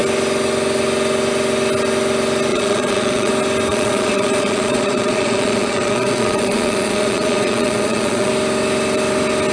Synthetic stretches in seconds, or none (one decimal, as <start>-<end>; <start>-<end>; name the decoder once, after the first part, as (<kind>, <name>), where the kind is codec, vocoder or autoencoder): 2.5-3.3 (vocoder, Vocos); 3.7-8.3